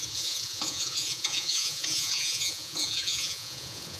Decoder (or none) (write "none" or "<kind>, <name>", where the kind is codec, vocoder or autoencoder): vocoder, Vocos